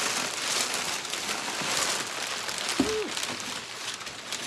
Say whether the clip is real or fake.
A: real